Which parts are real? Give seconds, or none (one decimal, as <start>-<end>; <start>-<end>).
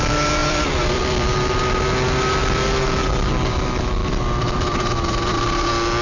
0.0-0.4; 1.6-4.0; 4.9-6.0